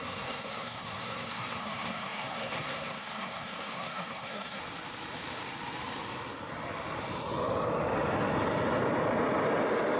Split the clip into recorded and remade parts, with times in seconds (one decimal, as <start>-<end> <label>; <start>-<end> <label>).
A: 0.0-4.6 remade; 4.6-10.0 recorded